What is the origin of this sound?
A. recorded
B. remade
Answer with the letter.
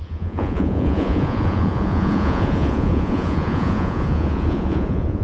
B